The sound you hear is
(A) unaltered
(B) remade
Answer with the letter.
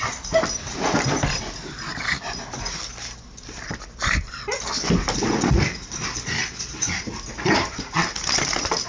A